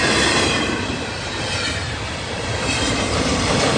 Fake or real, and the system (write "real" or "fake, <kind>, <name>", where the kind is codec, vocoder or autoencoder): fake, vocoder, BigVGAN v2